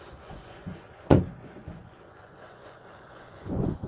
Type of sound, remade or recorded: remade